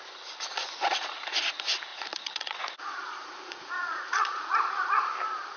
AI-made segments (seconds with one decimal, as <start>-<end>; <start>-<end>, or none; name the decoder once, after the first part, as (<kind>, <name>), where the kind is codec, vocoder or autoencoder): 0.5-1.4 (vocoder, Vocos); 1.9-5.1